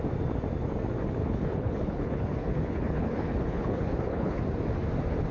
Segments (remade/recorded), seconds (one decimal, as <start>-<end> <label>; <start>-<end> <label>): 0.0-1.2 recorded; 1.2-4.4 remade; 4.4-5.3 recorded